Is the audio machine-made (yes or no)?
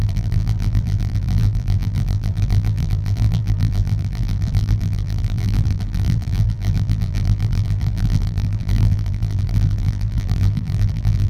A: yes